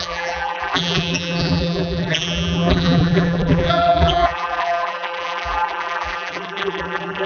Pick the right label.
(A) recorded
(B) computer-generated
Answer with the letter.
B